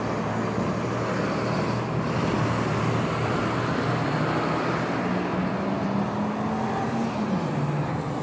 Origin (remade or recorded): recorded